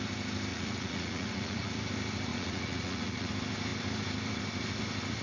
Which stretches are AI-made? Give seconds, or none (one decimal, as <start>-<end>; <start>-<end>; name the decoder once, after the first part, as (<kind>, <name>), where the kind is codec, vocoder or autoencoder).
0.5-1.7 (vocoder, Vocos); 2.3-3.3